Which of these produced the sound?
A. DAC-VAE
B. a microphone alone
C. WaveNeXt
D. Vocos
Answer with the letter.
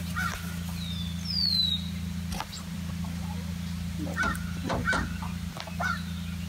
B